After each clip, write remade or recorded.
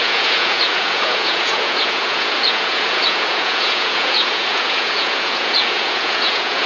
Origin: remade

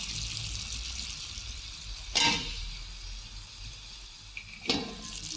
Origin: recorded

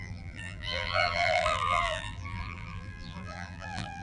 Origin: remade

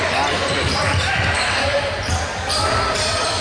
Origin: remade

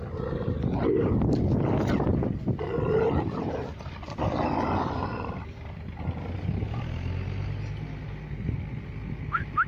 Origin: recorded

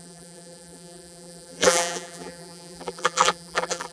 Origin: remade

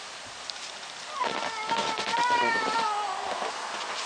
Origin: recorded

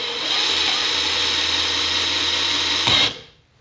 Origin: recorded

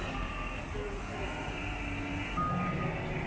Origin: recorded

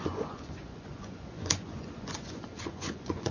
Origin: remade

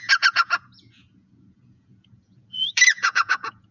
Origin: remade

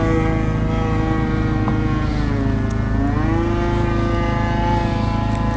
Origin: recorded